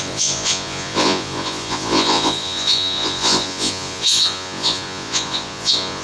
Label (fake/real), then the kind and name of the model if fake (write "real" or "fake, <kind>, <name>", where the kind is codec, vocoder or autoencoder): fake, vocoder, Vocos